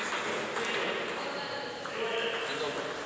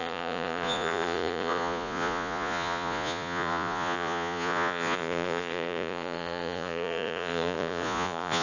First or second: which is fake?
second